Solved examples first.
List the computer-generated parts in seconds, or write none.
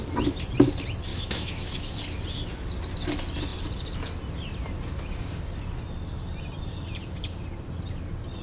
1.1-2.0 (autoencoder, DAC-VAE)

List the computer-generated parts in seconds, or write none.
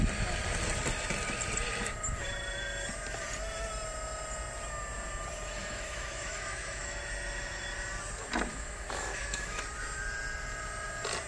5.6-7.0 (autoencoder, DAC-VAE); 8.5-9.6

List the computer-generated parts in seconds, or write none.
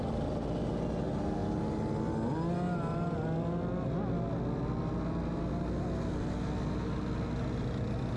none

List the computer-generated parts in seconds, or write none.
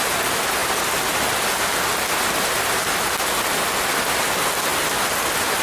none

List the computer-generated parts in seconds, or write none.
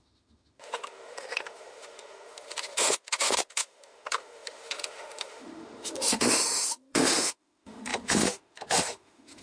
0.0-9.4 (autoencoder, DAC-VAE)